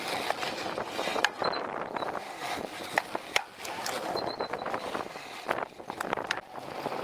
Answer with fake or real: real